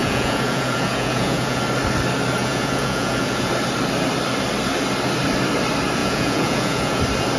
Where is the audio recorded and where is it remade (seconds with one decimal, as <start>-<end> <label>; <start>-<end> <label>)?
0.0-1.6 remade; 1.6-2.4 recorded; 2.4-3.5 remade; 3.5-6.0 recorded; 6.0-7.0 remade; 7.0-7.4 recorded